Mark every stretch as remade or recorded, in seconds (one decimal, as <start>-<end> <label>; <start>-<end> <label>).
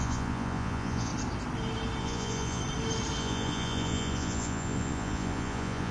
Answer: 0.0-1.1 remade; 1.1-2.0 recorded; 2.0-2.6 remade; 2.6-3.2 recorded; 3.2-5.9 remade